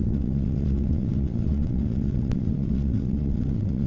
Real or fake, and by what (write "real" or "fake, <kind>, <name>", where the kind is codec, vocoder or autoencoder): fake, vocoder, WaveNeXt